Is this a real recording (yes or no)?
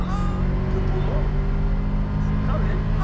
yes